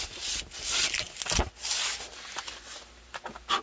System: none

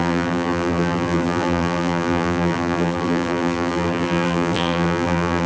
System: vocoder, BigVGAN v2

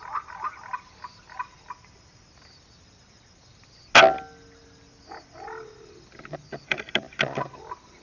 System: none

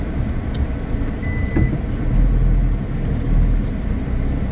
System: none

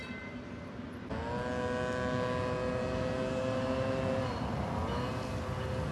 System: none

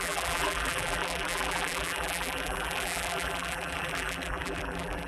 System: vocoder, BigVGAN v2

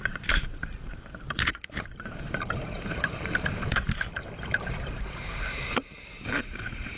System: vocoder, BigVGAN v2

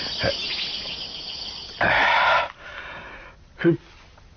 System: none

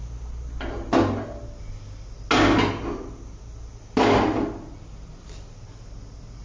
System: none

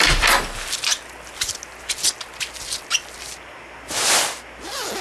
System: none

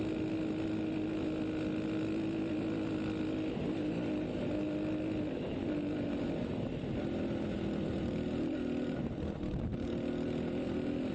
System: none